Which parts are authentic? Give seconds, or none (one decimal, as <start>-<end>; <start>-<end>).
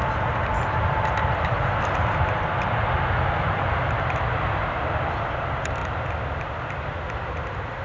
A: 0.0-7.8